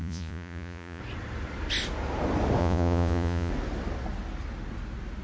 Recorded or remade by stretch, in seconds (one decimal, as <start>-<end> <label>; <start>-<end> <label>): 0.0-1.0 remade; 1.0-2.6 recorded; 2.6-3.5 remade; 3.5-5.2 recorded